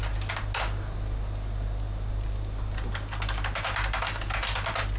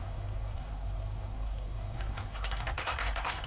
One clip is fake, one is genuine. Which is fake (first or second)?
second